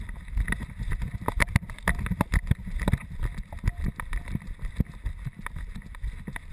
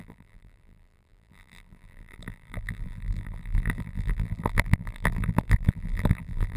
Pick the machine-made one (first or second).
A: second